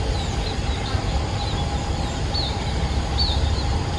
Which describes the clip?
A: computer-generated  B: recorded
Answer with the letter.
B